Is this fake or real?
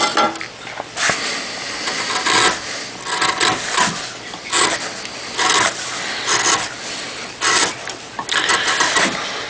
real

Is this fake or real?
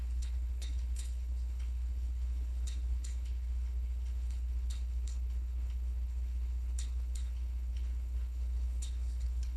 fake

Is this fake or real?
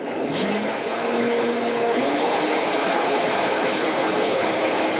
fake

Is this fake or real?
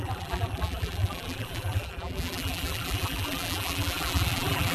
fake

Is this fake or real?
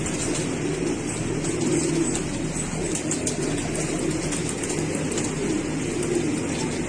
real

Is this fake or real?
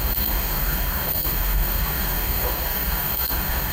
fake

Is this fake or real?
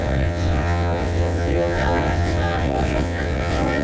fake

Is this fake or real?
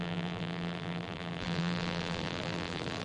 fake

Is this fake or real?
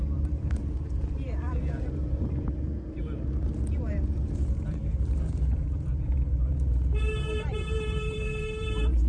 fake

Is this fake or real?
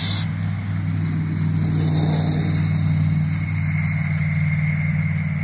real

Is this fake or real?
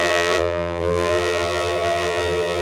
fake